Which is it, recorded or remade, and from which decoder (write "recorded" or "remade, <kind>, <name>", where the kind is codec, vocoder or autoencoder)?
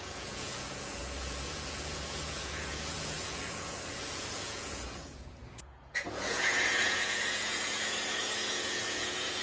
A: remade, vocoder, Vocos